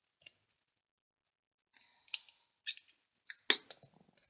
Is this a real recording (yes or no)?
yes